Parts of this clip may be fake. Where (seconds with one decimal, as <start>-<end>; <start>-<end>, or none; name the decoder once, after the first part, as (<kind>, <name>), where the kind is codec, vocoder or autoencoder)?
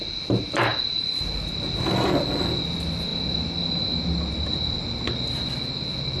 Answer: none